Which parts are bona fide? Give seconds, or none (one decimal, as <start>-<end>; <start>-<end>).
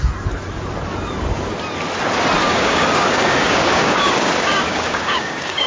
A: 0.0-2.4